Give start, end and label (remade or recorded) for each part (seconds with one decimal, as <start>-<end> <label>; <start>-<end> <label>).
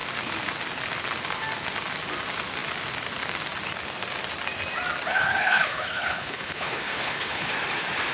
0.0-5.1 recorded; 5.1-7.5 remade; 7.5-8.1 recorded